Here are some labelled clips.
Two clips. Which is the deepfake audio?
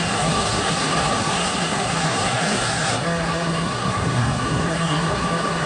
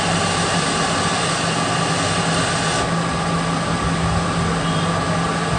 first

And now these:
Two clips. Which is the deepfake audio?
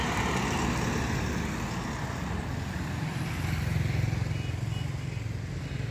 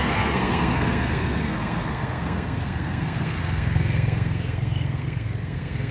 second